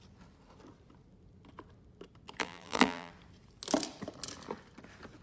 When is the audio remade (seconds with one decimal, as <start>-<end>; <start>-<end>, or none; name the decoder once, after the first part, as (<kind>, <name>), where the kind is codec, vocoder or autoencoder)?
2.4-3.1 (vocoder, BigVGAN v2)